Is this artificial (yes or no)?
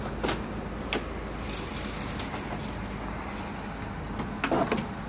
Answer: no